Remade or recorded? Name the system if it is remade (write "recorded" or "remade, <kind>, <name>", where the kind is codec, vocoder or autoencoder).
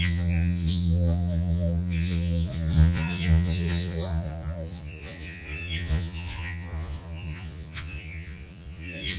remade, vocoder, Vocos